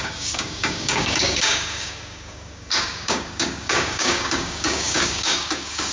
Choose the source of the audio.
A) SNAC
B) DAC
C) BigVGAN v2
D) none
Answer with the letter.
B